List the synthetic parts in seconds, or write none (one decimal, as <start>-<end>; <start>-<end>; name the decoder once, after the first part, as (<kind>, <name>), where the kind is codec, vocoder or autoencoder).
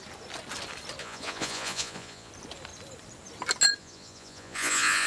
1.0-2.3 (vocoder, Vocos); 3.8-5.1